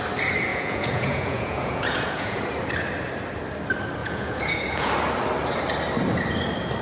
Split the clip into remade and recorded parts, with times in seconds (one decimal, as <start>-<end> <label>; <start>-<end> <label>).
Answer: 0.0-0.5 recorded; 0.5-2.4 remade; 2.4-4.0 recorded; 4.0-4.9 remade; 4.9-6.8 recorded

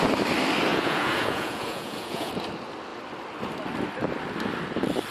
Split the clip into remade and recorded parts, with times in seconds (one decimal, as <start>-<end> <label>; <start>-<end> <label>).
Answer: 0.0-0.7 recorded; 0.7-2.3 remade; 2.3-5.1 recorded